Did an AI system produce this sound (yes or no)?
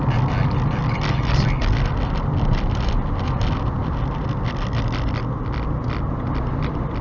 no